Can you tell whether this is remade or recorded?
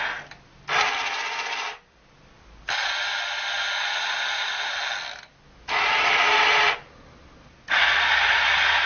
recorded